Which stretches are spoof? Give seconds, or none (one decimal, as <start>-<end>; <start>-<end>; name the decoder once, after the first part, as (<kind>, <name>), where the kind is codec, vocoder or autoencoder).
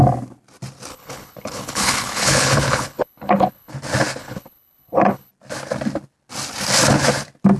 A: 0.9-3.7 (codec, HILCodec); 4.2-5.3